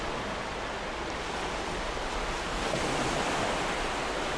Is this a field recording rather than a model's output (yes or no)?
yes